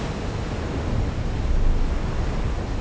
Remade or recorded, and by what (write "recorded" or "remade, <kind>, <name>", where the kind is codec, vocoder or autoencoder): recorded